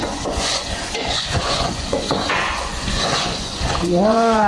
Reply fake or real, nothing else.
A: fake